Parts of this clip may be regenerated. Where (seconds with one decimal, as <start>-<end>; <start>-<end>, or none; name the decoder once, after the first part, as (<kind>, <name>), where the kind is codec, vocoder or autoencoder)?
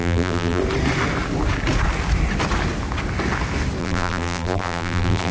0.0-0.6 (vocoder, BigVGAN v2); 3.8-5.3